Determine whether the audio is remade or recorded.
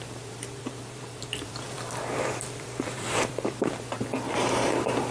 remade